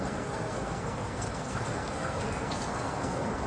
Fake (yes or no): yes